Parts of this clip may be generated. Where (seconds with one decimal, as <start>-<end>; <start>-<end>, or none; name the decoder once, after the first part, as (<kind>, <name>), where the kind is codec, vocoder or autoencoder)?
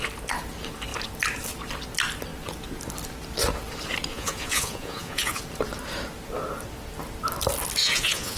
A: 4.1-5.4 (vocoder, Vocos); 7.8-8.4